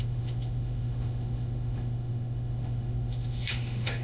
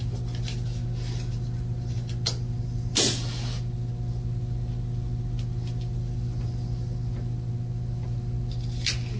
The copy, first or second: first